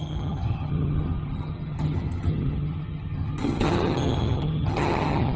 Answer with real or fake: fake